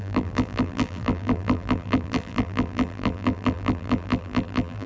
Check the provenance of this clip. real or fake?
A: fake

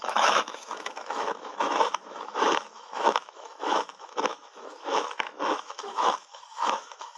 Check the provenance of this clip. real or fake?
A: fake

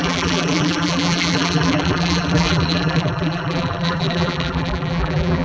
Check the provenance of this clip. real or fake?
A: fake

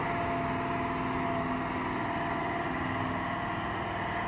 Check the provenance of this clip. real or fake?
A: real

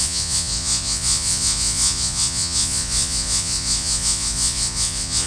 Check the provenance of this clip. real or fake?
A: fake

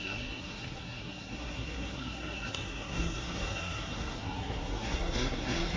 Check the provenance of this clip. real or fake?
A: fake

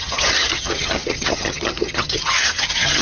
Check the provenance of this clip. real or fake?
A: fake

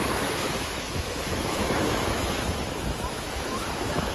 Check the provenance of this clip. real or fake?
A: fake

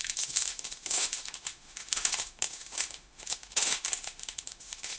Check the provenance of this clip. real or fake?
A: fake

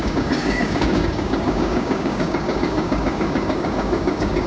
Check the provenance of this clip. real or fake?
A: fake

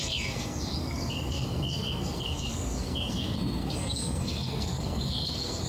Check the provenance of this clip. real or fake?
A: fake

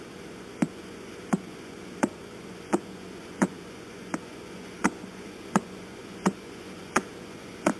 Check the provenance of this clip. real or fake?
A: fake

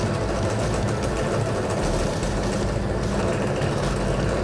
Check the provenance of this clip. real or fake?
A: real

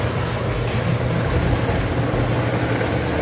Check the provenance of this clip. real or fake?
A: real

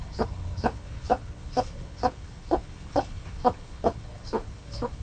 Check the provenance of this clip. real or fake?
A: fake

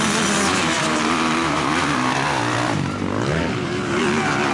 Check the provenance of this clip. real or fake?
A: real